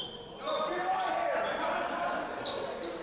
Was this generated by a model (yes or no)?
no